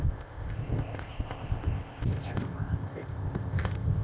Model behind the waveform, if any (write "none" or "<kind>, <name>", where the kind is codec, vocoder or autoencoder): codec, ZipCodec